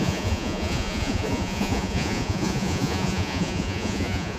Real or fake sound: fake